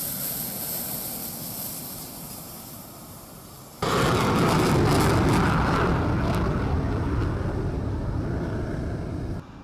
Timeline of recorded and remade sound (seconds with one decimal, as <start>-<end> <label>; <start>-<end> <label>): 0.0-1.8 recorded; 1.8-3.6 remade; 3.6-9.6 recorded